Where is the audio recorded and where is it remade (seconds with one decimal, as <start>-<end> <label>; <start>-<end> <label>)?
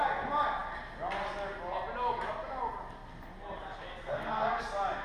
0.0-4.0 recorded; 4.0-4.6 remade; 4.6-5.0 recorded